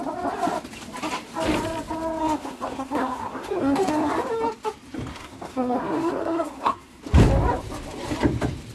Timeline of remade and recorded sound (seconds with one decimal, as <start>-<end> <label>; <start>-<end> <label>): 0.0-2.2 recorded; 2.2-4.1 remade; 4.1-5.1 recorded; 5.1-7.0 remade; 7.0-8.7 recorded